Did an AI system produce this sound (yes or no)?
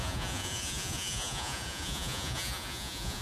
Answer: yes